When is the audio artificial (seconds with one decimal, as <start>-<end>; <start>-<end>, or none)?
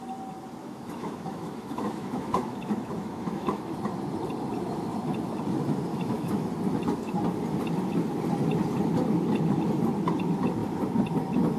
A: 0.6-3.6; 5.9-6.5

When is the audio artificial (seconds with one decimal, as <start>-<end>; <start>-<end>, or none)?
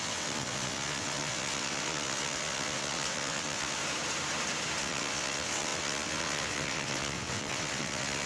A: 0.0-3.8; 4.8-8.3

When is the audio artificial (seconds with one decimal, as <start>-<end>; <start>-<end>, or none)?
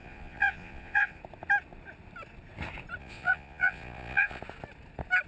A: 0.0-1.2; 3.0-4.4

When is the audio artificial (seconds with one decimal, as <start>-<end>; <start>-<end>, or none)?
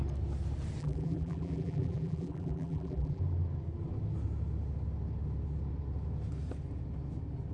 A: 0.8-3.2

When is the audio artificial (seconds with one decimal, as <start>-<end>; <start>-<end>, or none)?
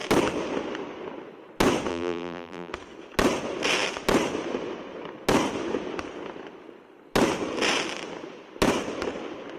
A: 1.9-2.7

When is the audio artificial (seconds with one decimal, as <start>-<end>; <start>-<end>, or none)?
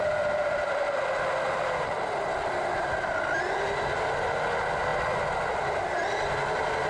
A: none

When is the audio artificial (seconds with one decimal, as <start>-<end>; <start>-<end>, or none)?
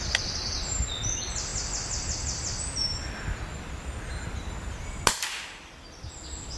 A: none